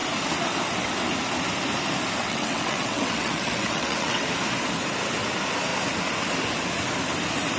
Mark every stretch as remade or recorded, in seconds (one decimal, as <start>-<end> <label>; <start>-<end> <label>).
0.0-2.2 recorded; 2.2-4.3 remade; 4.3-7.6 recorded